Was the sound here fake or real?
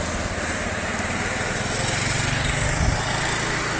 real